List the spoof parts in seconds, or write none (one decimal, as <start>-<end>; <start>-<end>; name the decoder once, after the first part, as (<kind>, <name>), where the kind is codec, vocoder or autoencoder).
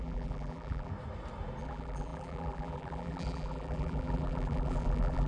0.0-0.9 (vocoder, BigVGAN v2); 1.6-5.3